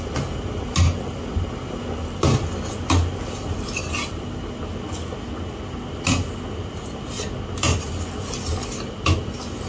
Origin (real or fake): real